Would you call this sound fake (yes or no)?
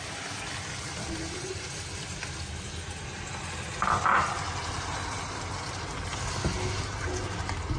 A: no